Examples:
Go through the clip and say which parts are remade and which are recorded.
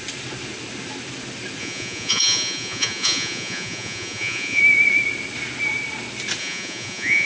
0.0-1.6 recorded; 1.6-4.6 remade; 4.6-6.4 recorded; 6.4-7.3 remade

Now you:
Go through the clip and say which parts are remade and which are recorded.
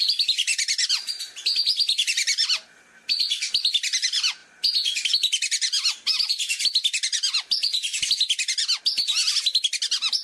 0.0-0.5 recorded; 0.5-1.2 remade; 1.2-10.2 recorded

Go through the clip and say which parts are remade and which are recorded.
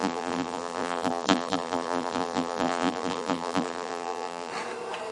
0.0-4.5 remade; 4.5-5.1 recorded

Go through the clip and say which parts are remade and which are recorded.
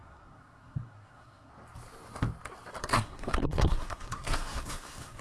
0.0-1.5 remade; 1.5-2.8 recorded; 2.8-5.2 remade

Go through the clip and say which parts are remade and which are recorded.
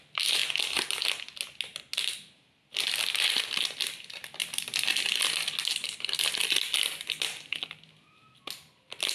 0.0-9.1 recorded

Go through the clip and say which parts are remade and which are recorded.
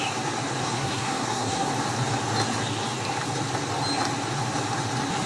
0.0-0.6 recorded; 0.6-1.7 remade; 1.7-5.3 recorded